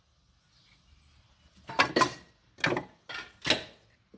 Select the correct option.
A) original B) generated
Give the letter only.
A